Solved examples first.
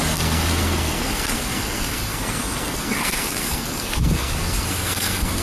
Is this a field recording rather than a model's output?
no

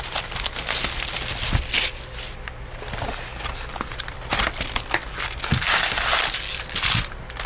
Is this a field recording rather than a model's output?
yes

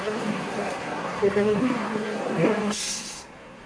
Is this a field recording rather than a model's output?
no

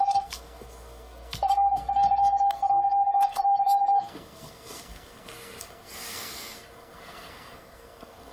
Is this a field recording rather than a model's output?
no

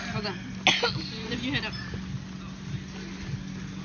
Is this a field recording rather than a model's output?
yes